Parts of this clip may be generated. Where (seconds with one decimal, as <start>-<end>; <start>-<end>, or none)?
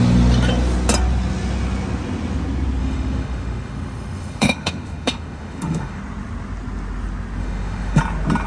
2.8-6.0; 7.4-8.0